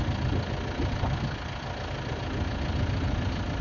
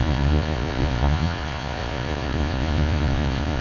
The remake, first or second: second